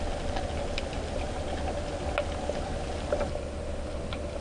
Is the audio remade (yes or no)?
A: no